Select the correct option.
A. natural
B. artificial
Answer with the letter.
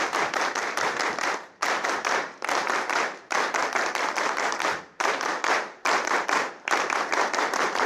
B